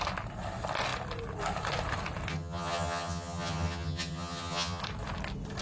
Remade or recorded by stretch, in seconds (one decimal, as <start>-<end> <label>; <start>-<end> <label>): 0.0-2.3 recorded; 2.3-4.8 remade; 4.8-5.6 recorded